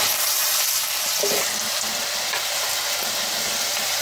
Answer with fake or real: real